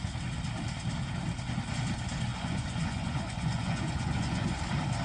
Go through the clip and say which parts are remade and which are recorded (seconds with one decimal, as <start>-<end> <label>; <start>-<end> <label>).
0.0-2.3 recorded; 2.3-4.6 remade; 4.6-5.0 recorded